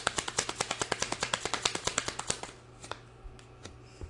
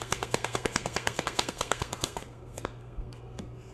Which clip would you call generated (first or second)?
second